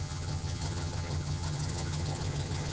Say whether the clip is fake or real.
fake